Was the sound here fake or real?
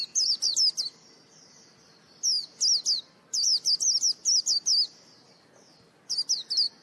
real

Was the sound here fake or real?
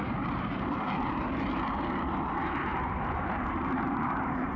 fake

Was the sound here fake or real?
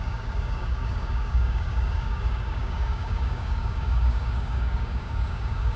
fake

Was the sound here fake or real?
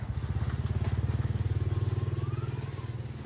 real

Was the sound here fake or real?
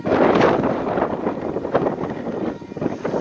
real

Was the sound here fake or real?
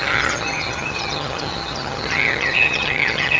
fake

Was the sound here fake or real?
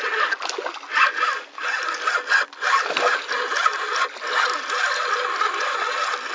real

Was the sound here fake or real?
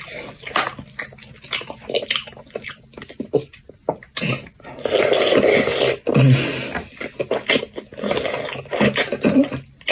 real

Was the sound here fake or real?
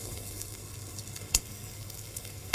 fake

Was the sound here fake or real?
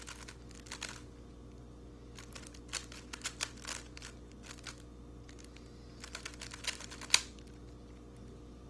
real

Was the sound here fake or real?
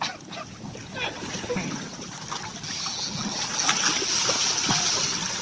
real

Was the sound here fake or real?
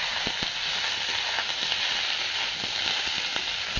real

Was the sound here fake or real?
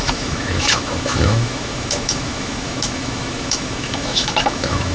fake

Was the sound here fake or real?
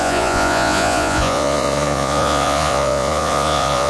fake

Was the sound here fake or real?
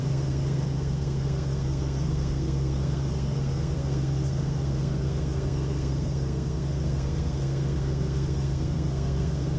fake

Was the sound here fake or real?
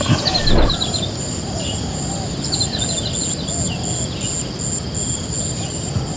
real